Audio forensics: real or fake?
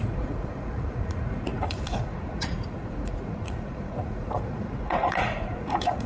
fake